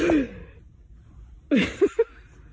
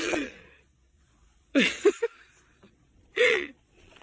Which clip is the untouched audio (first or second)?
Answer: first